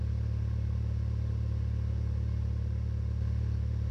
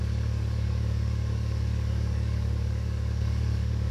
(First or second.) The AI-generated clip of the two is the second